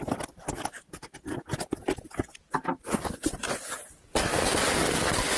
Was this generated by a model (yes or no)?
no